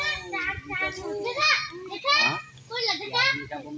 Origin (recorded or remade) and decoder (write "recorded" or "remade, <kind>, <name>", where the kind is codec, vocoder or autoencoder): recorded